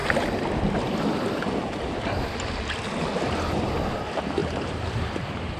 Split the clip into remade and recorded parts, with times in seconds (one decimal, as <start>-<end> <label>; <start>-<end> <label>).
0.0-4.4 recorded; 4.4-5.6 remade